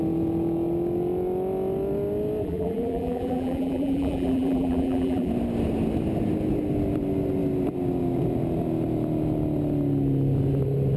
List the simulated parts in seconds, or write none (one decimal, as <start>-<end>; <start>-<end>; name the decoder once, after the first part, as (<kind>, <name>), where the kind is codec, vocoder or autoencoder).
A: 2.4-5.3 (vocoder, BigVGAN v2)